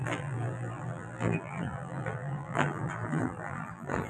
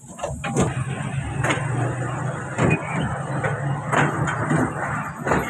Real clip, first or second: second